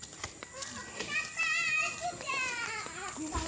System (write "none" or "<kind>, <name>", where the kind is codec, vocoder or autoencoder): none